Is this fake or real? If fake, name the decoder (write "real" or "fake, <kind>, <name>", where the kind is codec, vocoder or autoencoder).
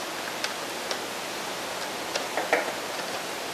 real